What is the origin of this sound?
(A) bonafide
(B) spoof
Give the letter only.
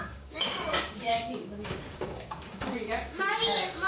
B